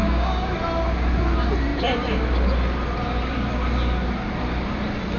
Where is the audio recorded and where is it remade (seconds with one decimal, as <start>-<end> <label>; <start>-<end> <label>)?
0.0-0.5 remade; 0.5-5.2 recorded